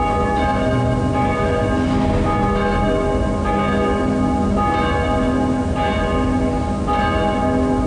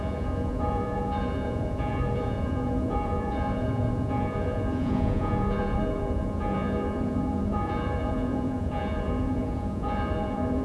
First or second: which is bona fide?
first